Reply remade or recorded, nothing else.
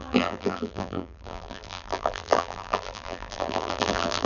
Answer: remade